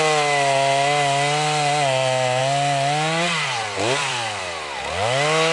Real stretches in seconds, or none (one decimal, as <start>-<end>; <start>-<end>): 0.0-2.4; 4.4-5.5